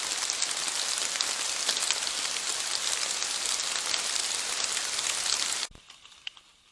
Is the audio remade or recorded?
recorded